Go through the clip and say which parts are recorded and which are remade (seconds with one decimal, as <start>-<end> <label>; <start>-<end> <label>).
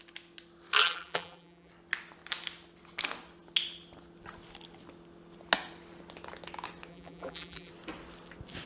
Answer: 0.0-0.8 recorded; 0.8-1.7 remade; 1.7-6.9 recorded; 6.9-7.7 remade; 7.7-8.7 recorded